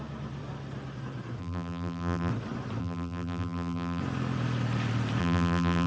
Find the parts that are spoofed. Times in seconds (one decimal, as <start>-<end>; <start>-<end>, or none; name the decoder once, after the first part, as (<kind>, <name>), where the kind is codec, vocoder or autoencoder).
1.4-2.3 (vocoder, BigVGAN v2); 2.8-4.0; 5.2-5.9